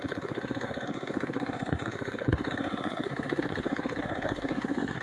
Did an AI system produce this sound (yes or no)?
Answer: yes